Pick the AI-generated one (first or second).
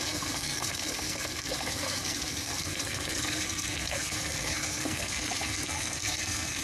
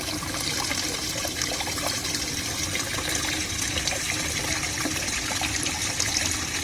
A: first